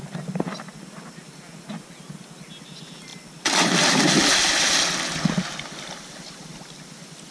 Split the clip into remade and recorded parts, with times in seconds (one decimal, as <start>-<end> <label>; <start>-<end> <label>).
0.0-7.3 recorded